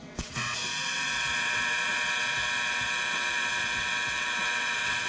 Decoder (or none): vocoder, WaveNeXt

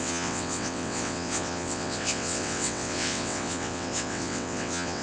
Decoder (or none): vocoder, WaveNeXt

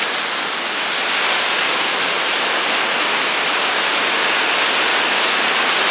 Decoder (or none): none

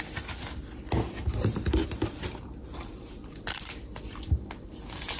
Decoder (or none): none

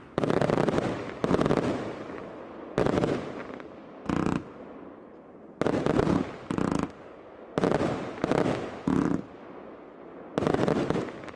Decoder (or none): none